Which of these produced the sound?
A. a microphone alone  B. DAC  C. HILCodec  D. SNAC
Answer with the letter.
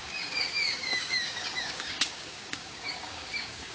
B